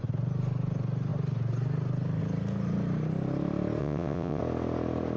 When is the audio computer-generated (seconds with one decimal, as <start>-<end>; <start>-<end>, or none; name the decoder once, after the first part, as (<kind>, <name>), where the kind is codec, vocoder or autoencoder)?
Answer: 3.8-4.4 (vocoder, WaveNeXt)